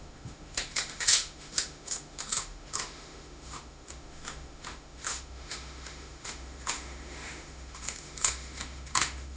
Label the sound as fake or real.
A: fake